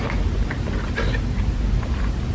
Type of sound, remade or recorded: recorded